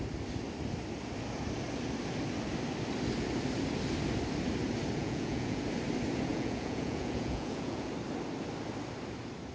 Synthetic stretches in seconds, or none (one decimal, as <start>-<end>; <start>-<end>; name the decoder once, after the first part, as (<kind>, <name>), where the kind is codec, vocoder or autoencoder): 5.0-5.6 (vocoder, Vocos); 6.3-7.9